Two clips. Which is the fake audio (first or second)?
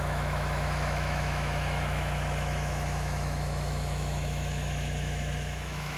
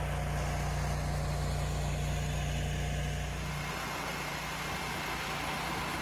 first